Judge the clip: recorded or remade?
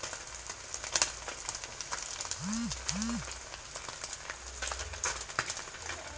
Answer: recorded